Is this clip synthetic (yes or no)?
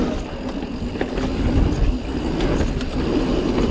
no